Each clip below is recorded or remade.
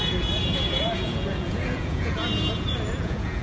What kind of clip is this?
remade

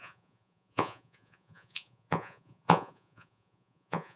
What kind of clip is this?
remade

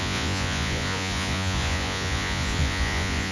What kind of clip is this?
remade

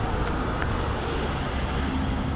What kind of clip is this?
recorded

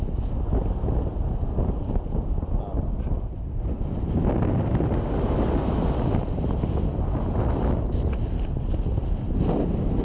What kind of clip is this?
recorded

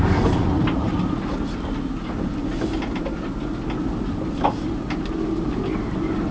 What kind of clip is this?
recorded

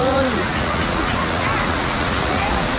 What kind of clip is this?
remade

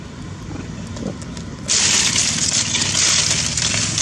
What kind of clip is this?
recorded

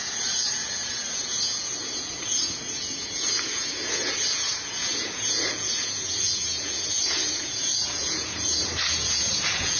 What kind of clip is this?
remade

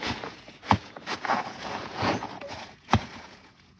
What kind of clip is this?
remade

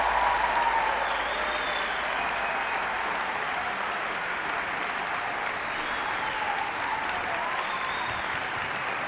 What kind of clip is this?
recorded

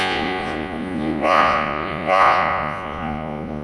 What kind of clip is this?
remade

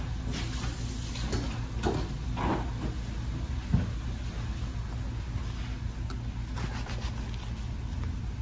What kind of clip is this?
recorded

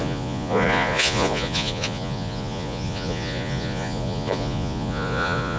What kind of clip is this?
remade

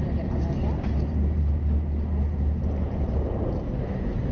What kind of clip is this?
recorded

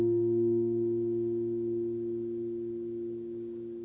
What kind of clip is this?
recorded